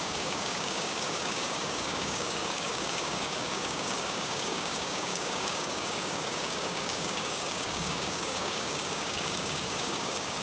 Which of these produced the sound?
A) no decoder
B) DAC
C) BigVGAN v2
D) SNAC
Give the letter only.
B